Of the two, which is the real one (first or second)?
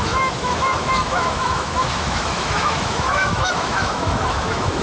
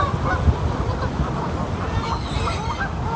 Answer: second